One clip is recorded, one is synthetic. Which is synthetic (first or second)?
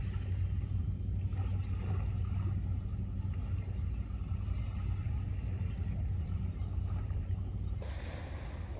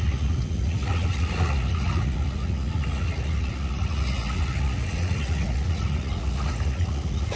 second